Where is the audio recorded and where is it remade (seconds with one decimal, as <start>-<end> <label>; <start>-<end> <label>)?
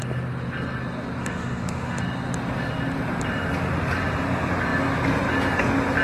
0.0-1.2 recorded; 1.2-2.0 remade; 2.0-6.0 recorded